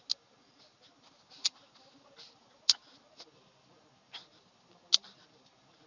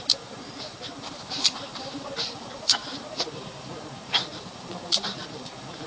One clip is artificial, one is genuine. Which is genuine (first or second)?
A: first